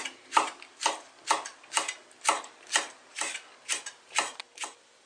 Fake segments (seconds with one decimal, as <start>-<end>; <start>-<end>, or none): none